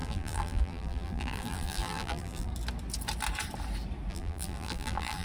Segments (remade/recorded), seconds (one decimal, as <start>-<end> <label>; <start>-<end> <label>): 0.0-2.5 remade; 2.5-4.1 recorded; 4.1-5.2 remade